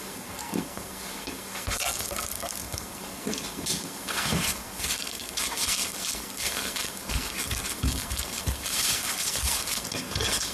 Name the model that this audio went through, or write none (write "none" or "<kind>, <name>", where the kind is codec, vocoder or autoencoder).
codec, SNAC